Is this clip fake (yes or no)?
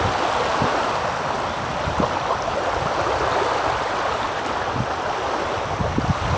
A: no